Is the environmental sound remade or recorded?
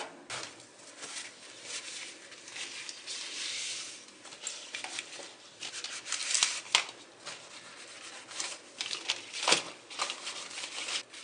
recorded